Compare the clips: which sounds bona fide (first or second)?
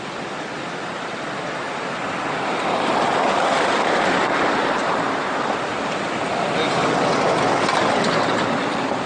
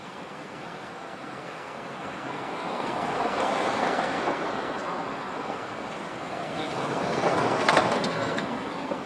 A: first